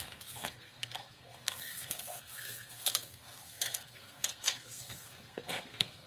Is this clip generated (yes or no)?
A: yes